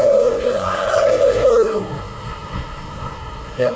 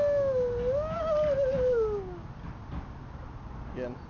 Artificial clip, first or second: first